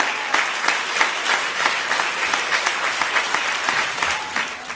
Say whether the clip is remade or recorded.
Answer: recorded